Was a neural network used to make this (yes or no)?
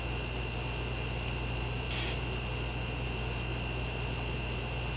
no